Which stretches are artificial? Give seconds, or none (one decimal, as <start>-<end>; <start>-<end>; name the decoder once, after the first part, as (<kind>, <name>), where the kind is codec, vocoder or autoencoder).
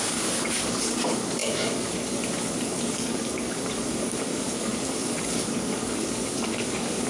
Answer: 0.0-7.1 (codec, DAC)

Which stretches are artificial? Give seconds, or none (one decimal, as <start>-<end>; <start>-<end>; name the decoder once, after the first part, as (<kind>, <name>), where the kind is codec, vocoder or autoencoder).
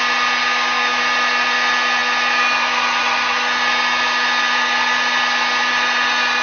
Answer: 0.4-1.0 (codec, DAC)